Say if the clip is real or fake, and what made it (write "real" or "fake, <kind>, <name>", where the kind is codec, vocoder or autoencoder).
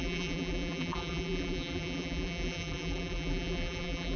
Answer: fake, vocoder, BigVGAN v2